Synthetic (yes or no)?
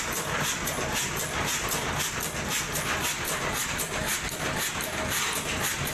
no